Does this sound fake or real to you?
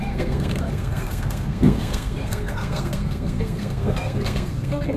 fake